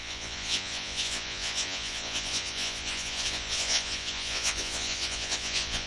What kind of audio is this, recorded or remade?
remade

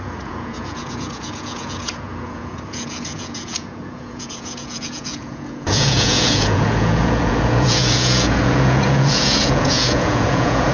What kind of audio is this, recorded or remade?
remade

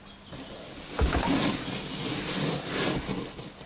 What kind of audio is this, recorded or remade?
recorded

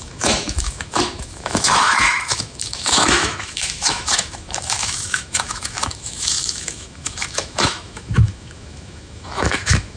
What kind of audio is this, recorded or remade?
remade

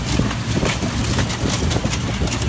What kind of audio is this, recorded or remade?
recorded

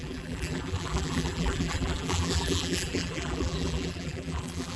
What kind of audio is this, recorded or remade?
remade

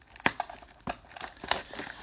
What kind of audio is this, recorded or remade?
recorded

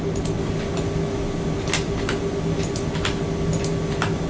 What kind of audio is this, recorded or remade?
recorded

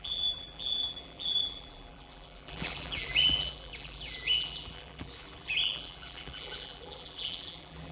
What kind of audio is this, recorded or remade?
remade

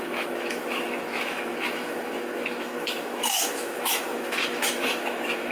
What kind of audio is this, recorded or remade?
remade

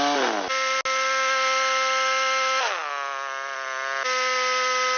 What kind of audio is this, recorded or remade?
recorded